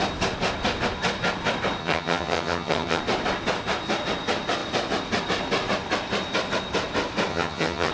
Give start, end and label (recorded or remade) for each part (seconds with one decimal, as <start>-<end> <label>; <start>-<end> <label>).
0.0-1.8 recorded; 1.8-3.0 remade; 3.0-7.3 recorded; 7.3-7.9 remade